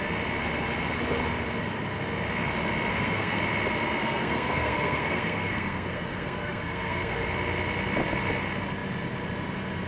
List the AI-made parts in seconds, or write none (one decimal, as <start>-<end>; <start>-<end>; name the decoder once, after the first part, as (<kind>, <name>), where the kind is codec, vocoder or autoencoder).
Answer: 2.9-3.4 (codec, SNAC); 4.0-7.3